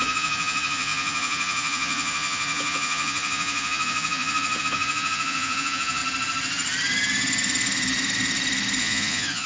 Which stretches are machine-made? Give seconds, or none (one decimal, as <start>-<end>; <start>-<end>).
0.0-6.0; 8.8-9.5